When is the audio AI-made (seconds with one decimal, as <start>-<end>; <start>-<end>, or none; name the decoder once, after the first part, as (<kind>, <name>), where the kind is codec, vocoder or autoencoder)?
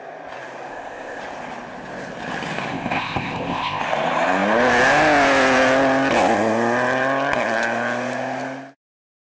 0.7-1.2 (codec, ZipCodec); 2.7-3.8